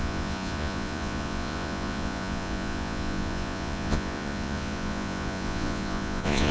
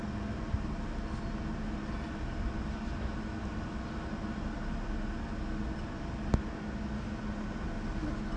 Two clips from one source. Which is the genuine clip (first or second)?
second